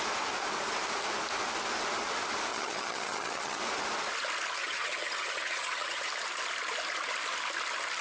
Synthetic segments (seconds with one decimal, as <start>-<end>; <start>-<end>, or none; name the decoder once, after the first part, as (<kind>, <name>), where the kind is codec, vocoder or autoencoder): 2.5-3.6 (vocoder, HiFi-GAN); 4.6-6.1